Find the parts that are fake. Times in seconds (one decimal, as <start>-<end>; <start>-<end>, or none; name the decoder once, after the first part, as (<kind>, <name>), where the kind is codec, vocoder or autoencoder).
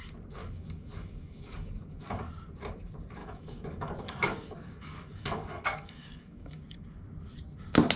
0.4-2.3 (codec, DAC); 3.2-6.9